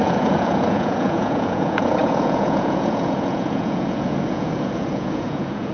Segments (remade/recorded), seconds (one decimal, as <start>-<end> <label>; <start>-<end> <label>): 0.0-5.7 remade